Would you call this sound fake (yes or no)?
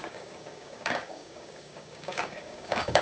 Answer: yes